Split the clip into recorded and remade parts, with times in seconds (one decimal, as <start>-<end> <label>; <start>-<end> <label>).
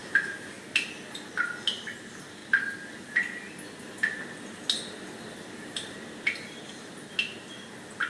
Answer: 0.0-0.6 remade; 0.6-8.1 recorded